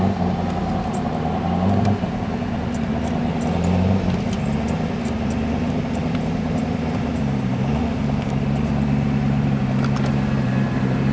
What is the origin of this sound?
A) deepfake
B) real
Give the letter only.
B